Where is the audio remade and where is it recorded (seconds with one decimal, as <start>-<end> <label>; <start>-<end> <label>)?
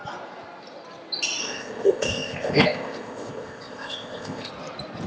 0.0-1.4 recorded; 1.4-4.5 remade; 4.5-5.1 recorded